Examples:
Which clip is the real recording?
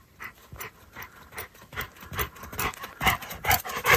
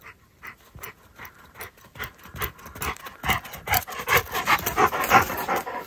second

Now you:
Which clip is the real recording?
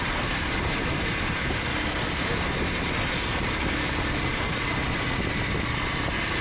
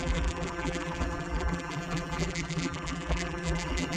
first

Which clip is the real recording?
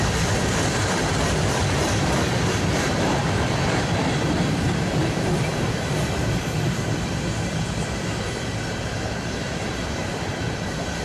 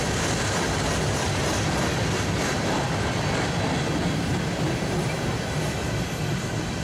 second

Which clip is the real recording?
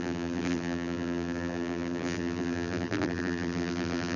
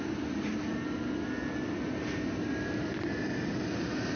second